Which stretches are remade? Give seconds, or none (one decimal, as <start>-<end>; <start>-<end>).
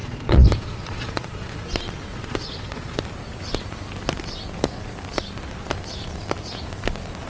0.0-1.6; 2.1-3.0